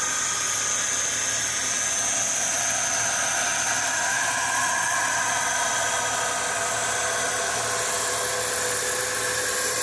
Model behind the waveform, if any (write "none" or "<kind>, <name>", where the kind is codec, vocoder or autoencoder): none